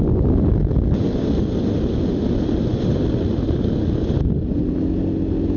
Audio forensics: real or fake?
real